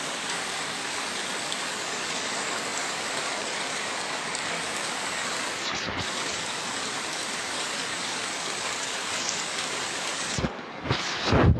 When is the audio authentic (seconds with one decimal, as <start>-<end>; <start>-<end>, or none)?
none